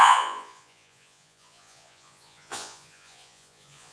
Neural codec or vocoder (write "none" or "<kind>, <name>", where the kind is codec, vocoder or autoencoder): vocoder, Vocos